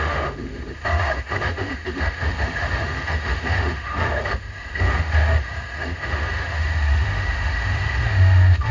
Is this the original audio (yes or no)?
no